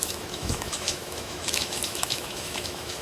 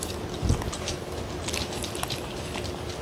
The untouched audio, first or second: second